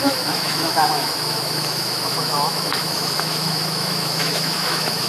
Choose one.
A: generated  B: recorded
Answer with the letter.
A